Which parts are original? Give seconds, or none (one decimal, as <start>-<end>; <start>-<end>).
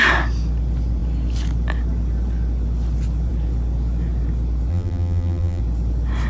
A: 0.0-4.7; 5.6-6.3